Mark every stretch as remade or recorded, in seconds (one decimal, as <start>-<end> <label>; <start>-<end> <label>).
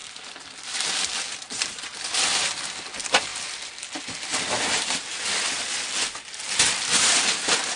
0.0-7.8 recorded